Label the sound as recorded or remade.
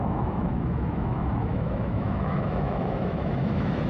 remade